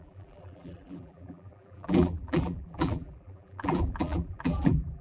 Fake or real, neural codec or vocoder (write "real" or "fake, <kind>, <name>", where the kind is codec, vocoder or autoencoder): fake, vocoder, BigVGAN v2